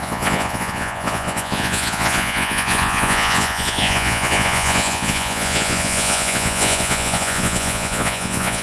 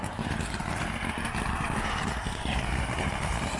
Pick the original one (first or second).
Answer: second